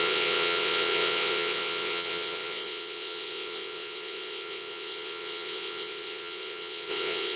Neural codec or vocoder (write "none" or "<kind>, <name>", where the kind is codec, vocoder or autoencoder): vocoder, WaveNeXt